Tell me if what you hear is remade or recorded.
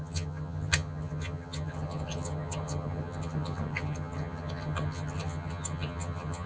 remade